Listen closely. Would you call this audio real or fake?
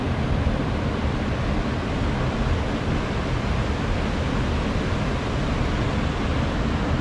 real